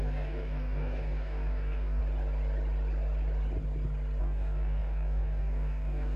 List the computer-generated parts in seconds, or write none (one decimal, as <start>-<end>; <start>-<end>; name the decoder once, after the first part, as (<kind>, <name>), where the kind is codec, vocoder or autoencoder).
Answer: 0.0-2.0 (codec, DAC); 4.2-6.2